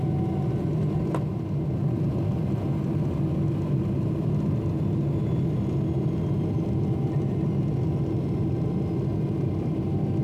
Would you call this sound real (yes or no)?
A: yes